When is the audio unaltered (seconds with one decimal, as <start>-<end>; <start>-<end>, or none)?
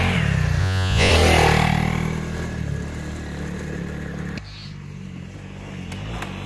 0.0-0.6; 1.1-6.5